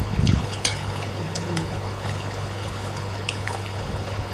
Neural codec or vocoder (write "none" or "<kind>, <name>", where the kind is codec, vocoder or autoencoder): codec, HILCodec